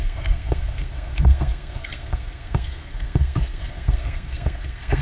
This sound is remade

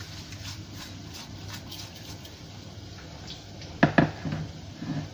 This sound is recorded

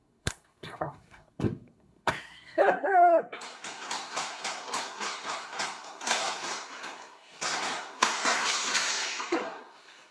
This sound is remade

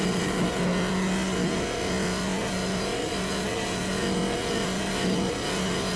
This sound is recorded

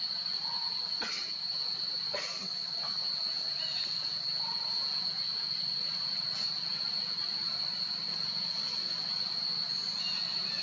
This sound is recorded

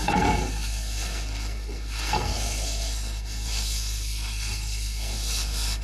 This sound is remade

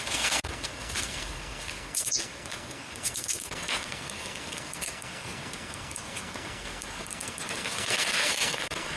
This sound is remade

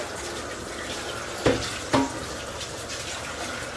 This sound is recorded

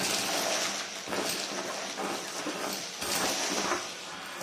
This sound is recorded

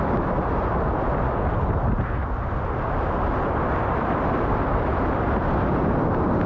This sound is recorded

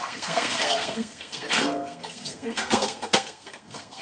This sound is remade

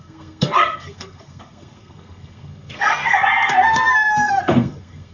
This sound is remade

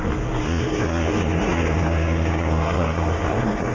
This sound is remade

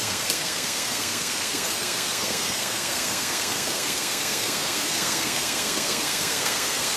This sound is remade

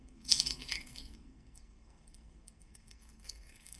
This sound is remade